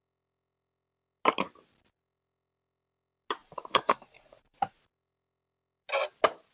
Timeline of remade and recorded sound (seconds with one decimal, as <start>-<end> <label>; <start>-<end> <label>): 0.0-3.4 recorded; 3.4-4.8 remade; 4.8-6.5 recorded